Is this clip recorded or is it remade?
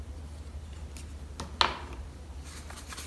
recorded